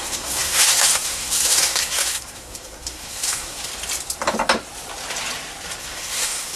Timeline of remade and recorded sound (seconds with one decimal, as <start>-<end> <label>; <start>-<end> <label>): 0.0-3.7 remade; 3.7-5.8 recorded; 5.8-6.6 remade